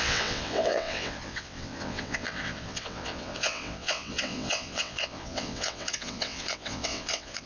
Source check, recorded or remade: remade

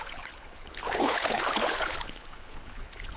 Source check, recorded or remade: remade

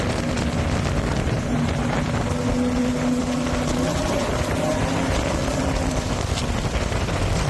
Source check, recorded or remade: recorded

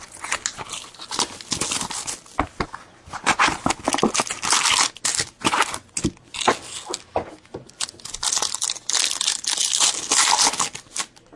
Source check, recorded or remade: recorded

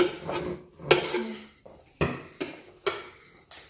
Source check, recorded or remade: recorded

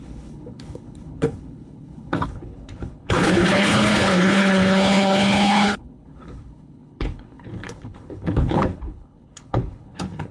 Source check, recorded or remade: remade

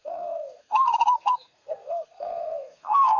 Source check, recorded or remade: remade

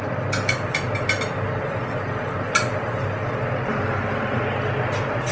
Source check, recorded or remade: recorded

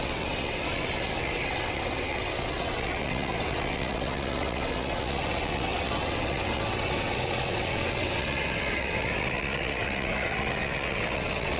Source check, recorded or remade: remade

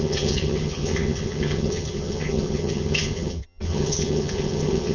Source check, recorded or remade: remade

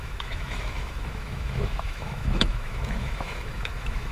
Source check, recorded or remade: remade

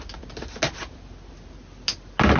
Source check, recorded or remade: recorded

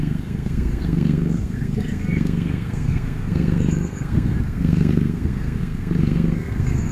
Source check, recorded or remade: remade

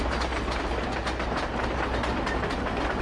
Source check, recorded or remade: recorded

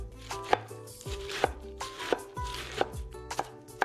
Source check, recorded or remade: remade